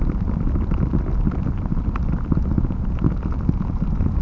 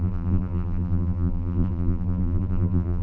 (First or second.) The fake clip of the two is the second